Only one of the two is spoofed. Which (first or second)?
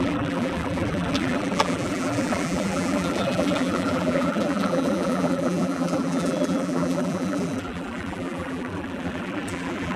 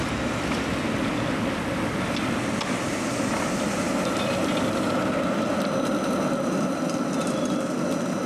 first